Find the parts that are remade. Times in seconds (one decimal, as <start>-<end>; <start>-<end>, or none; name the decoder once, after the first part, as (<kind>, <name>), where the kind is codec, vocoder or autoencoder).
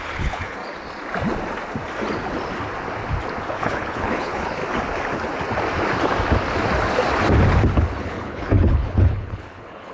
0.0-0.6 (codec, HILCodec); 3.5-4.6; 8.0-9.9